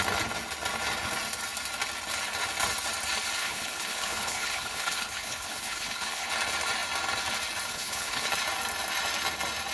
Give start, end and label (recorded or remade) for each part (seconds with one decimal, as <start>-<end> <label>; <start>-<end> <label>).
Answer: 0.0-3.4 recorded; 3.4-6.3 remade; 6.3-7.7 recorded; 7.7-8.3 remade; 8.3-9.7 recorded